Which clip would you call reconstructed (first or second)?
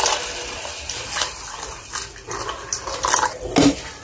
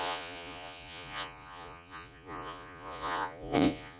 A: second